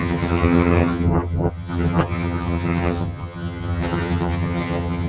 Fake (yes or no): yes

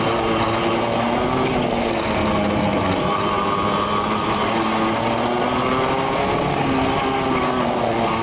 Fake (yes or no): no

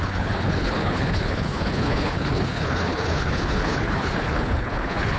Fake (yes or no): yes